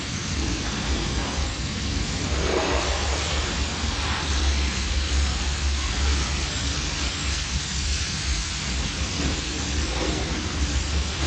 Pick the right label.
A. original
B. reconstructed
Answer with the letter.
B